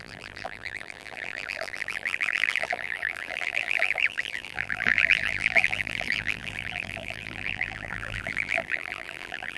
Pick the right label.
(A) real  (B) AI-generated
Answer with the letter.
B